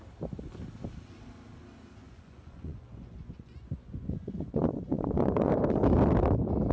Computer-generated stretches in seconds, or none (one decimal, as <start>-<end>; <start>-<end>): 2.0-5.5